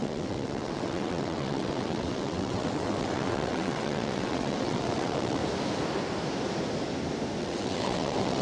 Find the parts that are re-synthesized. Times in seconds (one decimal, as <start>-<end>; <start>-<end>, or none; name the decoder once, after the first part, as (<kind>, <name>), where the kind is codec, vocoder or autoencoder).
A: 0.0-5.4 (vocoder, WaveNeXt); 7.4-8.4